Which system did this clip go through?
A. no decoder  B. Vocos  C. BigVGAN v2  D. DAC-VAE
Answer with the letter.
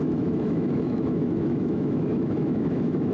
D